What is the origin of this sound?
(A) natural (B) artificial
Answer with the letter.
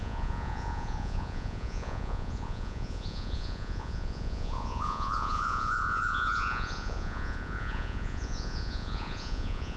B